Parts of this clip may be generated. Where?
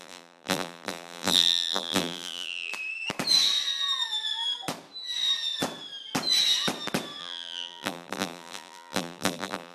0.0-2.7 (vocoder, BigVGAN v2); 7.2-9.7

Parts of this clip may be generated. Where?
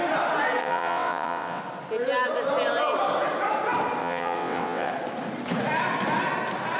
0.6-1.6 (vocoder, WaveNeXt); 4.0-4.9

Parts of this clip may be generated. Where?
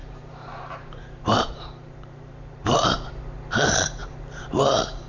0.0-3.1 (vocoder, BigVGAN v2); 4.0-5.1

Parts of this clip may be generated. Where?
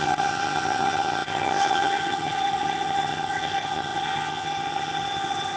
0.0-5.6 (vocoder, HiFi-GAN)